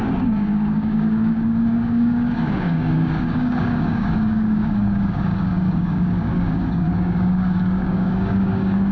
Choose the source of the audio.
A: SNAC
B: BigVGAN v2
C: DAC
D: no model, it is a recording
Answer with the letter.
C